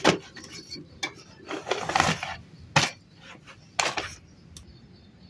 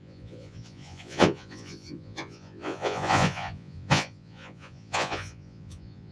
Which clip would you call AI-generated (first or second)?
second